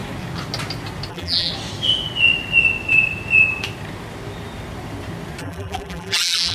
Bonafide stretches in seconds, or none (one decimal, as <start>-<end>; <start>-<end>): 0.0-1.1; 1.5-5.4